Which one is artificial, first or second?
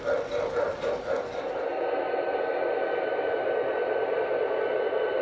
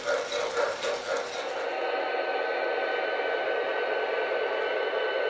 first